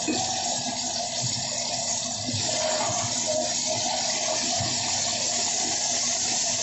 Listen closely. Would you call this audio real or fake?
real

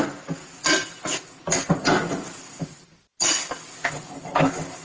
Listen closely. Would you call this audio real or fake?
real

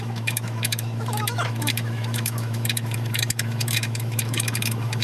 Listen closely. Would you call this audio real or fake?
fake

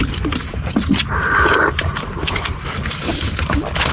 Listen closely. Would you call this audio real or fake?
real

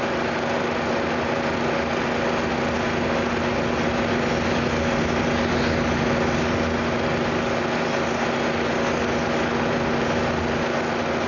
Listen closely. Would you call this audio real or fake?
real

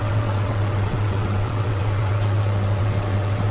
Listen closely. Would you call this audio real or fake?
fake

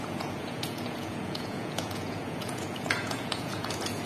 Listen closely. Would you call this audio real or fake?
fake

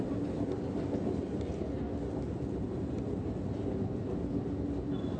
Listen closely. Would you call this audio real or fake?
real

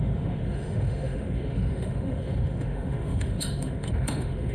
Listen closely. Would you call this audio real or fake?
fake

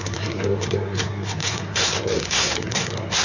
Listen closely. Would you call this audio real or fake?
fake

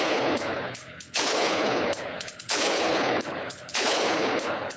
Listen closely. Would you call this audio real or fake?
fake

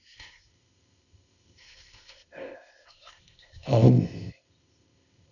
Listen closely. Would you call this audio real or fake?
fake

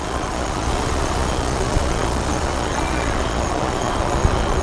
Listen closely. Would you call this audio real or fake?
fake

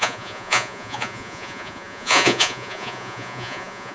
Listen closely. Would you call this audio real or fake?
fake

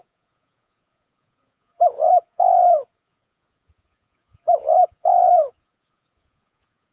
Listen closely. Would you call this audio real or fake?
fake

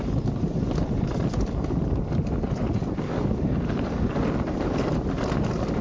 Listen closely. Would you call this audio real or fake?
real